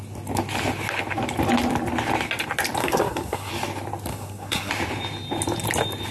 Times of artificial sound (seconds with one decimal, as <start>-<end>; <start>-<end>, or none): 2.8-3.5; 4.1-4.7